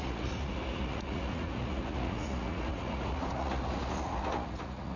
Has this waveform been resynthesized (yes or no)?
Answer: yes